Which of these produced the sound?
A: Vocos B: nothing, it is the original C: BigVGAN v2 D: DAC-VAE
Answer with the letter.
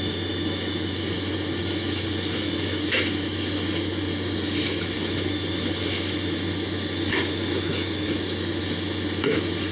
D